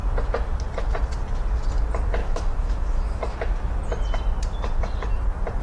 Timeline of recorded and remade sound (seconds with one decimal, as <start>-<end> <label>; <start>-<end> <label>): 0.0-2.2 recorded; 2.2-3.7 remade; 3.7-5.6 recorded